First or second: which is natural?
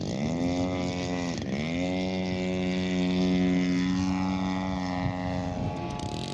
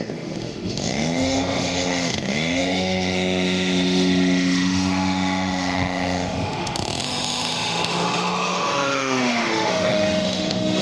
first